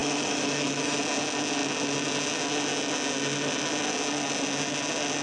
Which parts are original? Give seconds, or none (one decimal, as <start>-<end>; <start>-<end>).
1.0-5.2